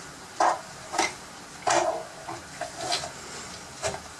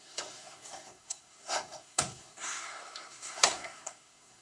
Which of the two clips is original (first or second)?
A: first